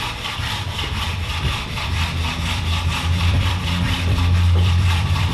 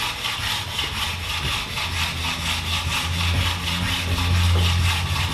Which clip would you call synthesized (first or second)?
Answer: first